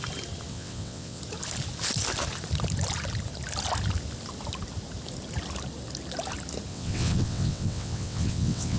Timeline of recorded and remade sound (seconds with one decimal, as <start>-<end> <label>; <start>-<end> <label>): 0.0-0.5 recorded; 0.5-1.2 remade; 1.2-6.7 recorded; 6.7-8.8 remade